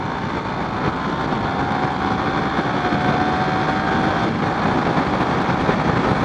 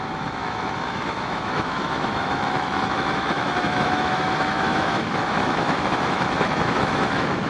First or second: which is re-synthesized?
second